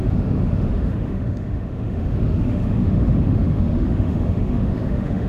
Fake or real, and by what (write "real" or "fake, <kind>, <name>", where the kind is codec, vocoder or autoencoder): fake, autoencoder, DAC-VAE